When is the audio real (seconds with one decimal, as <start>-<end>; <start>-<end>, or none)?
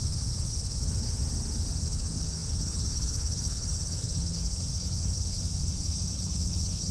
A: 1.2-1.8